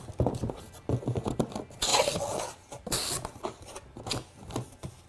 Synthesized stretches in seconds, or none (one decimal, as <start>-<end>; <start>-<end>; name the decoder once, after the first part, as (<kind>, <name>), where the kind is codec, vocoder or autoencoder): none